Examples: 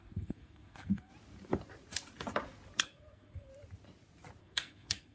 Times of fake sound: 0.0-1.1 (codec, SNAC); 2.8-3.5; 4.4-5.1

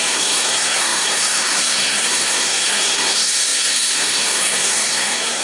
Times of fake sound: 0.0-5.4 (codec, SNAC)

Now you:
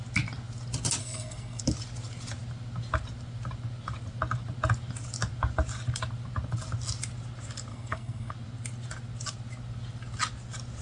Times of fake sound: 1.0-1.6 (codec, SNAC); 7.7-8.3

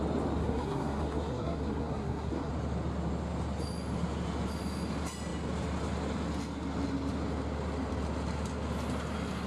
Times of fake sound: 0.4-2.5 (codec, SNAC)